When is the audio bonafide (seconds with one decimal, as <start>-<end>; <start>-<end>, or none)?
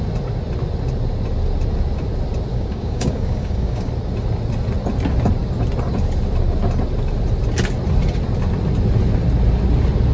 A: 0.0-2.5; 3.9-10.1